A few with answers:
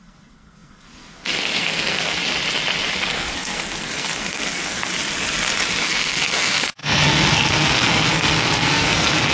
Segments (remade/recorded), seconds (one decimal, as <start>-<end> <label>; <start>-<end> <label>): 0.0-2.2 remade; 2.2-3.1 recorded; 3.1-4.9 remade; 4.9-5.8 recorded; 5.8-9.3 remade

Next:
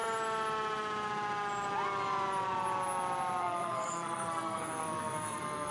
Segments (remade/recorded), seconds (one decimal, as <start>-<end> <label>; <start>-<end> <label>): 0.0-3.4 recorded; 3.4-5.7 remade

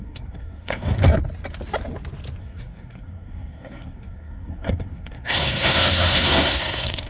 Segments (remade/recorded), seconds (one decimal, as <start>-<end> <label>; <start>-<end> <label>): 0.0-1.0 remade; 1.0-2.4 recorded; 2.4-7.1 remade

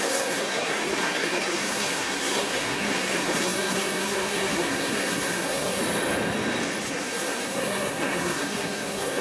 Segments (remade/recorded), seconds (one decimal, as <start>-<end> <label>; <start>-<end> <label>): 0.0-5.8 remade; 5.8-6.8 recorded; 6.8-9.2 remade

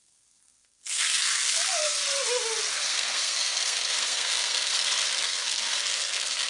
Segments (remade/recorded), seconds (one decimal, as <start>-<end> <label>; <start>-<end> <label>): 0.0-2.0 remade; 2.0-2.7 recorded; 2.7-6.5 remade

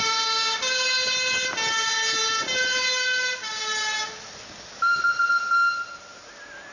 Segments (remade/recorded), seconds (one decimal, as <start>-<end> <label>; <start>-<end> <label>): 0.0-6.7 recorded

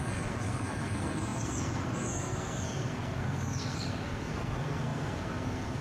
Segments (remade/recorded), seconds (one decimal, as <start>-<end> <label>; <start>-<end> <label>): 0.0-5.8 remade